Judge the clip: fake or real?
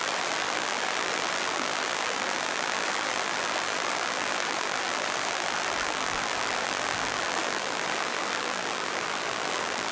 fake